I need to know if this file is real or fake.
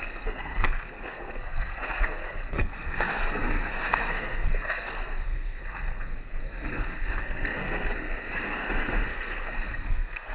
fake